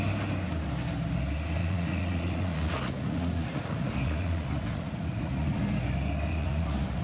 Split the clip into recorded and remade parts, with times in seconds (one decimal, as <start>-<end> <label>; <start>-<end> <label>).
0.0-1.6 recorded; 1.6-5.6 remade; 5.6-6.3 recorded; 6.3-7.0 remade